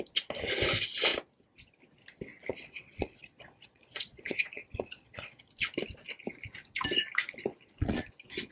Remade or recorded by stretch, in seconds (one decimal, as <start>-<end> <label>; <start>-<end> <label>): 0.0-2.3 recorded; 2.3-5.4 remade; 5.4-7.5 recorded; 7.5-8.1 remade; 8.1-8.5 recorded